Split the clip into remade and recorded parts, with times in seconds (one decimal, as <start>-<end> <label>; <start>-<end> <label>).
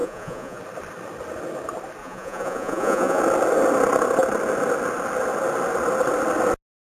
0.0-0.6 remade; 0.6-2.0 recorded; 2.0-3.2 remade; 3.2-6.9 recorded